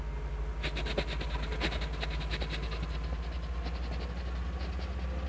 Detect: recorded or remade recorded